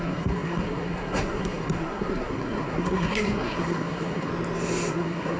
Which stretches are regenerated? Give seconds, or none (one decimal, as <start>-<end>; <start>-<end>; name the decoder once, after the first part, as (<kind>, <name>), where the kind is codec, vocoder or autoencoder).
0.0-4.3 (codec, SNAC); 4.9-5.4